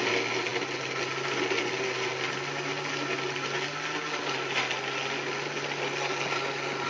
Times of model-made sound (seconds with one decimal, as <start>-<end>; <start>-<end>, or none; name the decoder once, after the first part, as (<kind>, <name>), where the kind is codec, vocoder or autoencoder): none